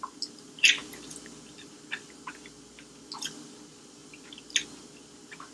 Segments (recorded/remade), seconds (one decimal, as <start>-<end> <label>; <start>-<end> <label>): 0.0-5.5 recorded